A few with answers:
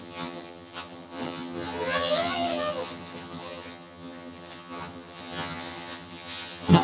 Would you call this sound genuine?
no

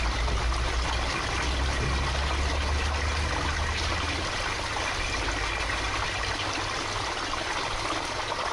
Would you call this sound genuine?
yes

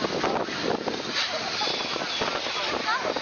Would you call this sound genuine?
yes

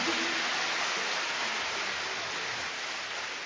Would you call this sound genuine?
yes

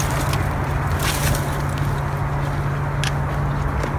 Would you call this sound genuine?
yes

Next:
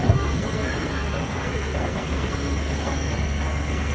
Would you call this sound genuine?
no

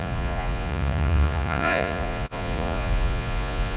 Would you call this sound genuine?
no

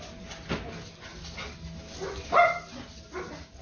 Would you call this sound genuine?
yes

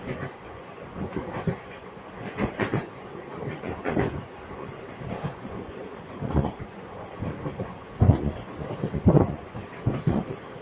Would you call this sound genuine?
no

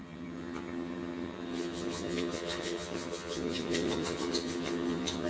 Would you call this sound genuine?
no